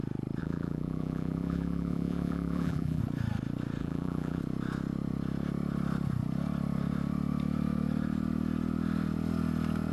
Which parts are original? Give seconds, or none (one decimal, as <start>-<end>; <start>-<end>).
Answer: 0.0-0.4; 3.0-3.8; 4.4-9.9